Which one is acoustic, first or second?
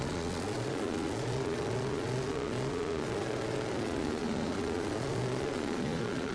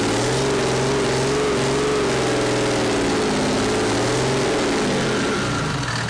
second